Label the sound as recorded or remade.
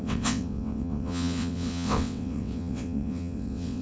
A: remade